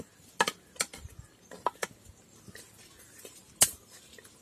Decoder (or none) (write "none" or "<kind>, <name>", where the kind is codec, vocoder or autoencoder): none